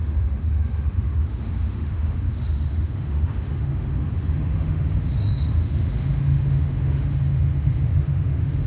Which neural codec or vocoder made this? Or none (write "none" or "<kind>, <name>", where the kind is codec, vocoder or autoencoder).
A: autoencoder, DAC-VAE